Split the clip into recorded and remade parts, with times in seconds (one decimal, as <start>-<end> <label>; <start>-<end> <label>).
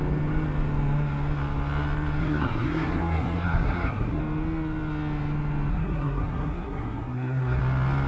0.0-2.2 recorded; 2.2-4.2 remade; 4.2-5.7 recorded; 5.7-7.6 remade; 7.6-8.1 recorded